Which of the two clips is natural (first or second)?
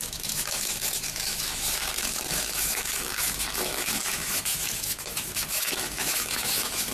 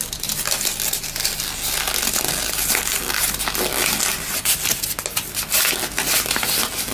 second